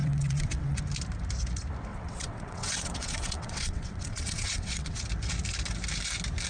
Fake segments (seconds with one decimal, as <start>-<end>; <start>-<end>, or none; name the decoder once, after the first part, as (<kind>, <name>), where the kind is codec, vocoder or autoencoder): 0.0-0.8 (vocoder, WaveNeXt); 1.9-5.0